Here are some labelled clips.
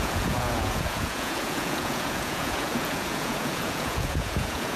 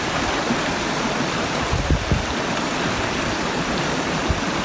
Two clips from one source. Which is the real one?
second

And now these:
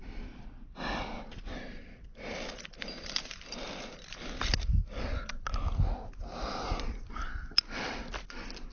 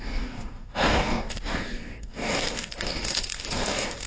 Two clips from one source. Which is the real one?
first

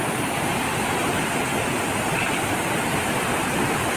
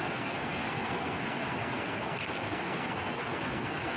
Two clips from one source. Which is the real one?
first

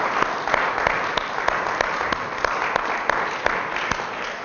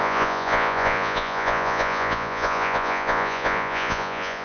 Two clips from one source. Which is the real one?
first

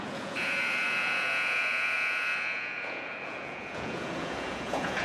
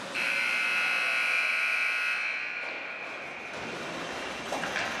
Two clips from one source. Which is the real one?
second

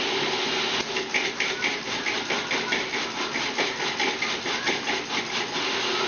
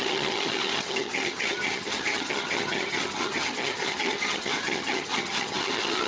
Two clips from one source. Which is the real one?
first